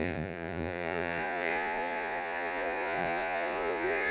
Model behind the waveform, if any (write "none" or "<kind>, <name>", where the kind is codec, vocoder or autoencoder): vocoder, Vocos